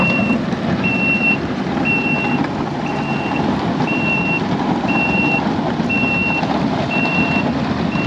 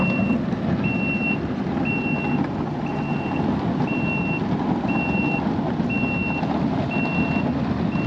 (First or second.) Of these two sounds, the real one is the second